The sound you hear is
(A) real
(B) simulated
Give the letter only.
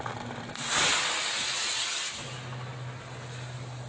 A